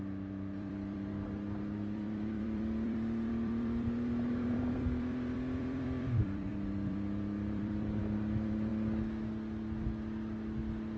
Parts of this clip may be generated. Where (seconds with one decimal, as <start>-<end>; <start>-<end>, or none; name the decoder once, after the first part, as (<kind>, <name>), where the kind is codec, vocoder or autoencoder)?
0.0-8.7 (vocoder, BigVGAN v2)